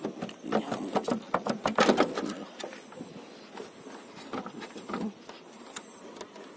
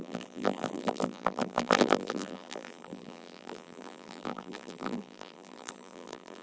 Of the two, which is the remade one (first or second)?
second